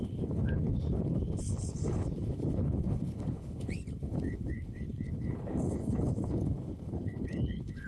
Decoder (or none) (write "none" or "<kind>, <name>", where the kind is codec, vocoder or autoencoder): codec, HILCodec